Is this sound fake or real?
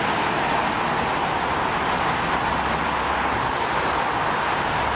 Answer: real